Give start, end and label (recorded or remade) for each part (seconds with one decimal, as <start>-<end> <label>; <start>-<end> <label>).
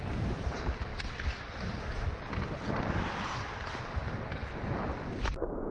0.0-5.7 recorded